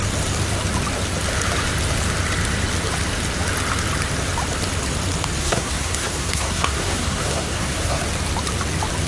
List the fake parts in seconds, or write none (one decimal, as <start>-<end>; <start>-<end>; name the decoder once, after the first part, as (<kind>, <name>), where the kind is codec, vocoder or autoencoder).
5.4-8.0 (codec, SNAC)